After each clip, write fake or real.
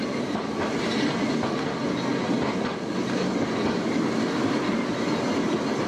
real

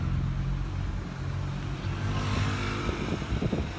real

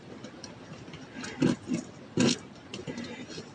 real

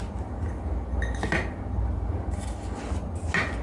real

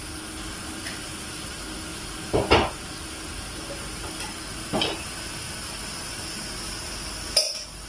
real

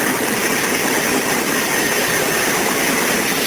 real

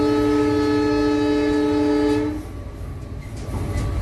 real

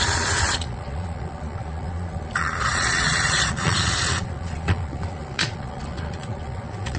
fake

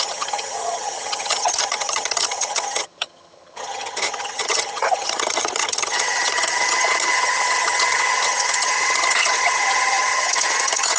fake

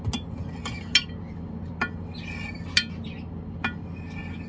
real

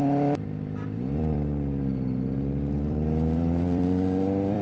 fake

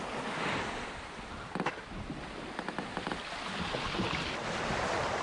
real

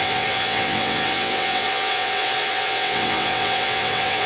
fake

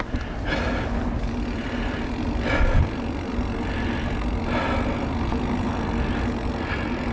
real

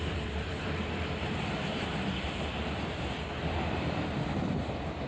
fake